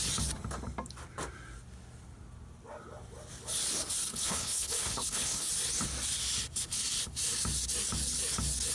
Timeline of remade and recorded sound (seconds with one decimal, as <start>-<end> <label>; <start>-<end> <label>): 0.0-4.1 recorded; 4.1-5.5 remade; 5.5-8.7 recorded